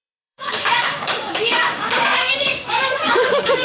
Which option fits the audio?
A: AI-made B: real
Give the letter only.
A